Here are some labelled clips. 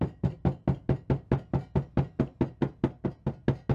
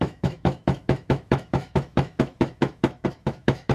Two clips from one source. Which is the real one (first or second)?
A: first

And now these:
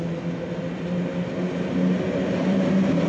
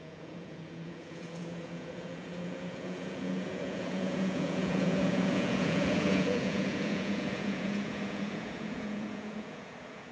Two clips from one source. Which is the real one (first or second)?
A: first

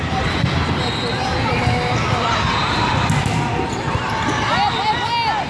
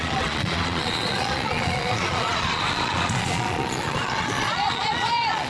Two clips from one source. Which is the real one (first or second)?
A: first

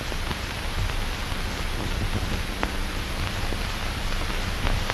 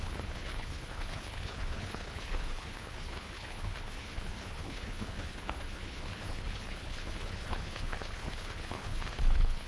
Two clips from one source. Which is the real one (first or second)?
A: first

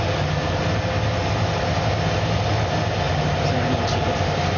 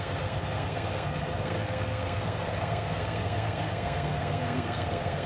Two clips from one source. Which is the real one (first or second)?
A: first